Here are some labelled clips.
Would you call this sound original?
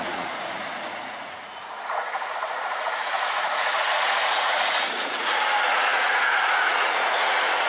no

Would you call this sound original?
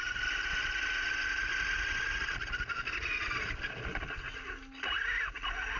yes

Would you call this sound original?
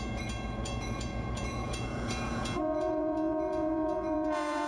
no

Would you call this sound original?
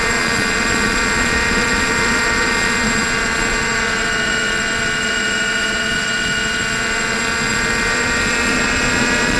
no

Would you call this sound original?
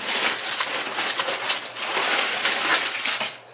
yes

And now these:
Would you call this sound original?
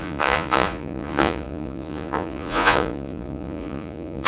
no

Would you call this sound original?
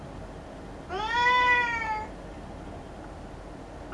yes